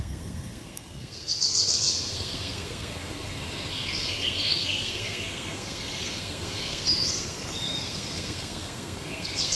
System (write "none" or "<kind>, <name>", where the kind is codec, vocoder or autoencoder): codec, SNAC